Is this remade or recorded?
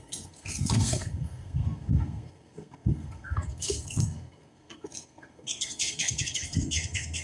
remade